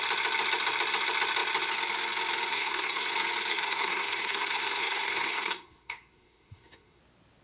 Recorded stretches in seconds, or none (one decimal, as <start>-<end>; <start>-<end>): 0.0-2.5; 3.1-3.5; 7.0-7.4